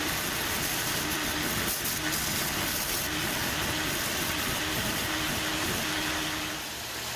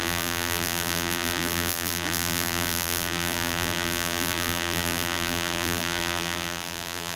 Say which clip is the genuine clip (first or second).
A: first